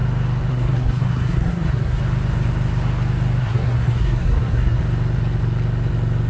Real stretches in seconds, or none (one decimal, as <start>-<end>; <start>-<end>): 0.0-0.5; 2.0-3.4; 4.8-6.3

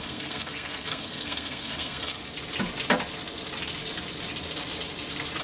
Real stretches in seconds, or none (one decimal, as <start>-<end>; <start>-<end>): 2.2-5.4

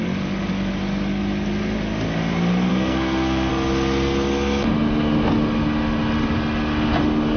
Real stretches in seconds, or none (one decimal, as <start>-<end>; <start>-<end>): 0.0-2.7; 3.5-7.4

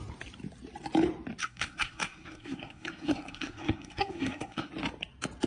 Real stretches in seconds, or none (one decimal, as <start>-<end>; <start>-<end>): 0.0-1.4; 4.7-5.5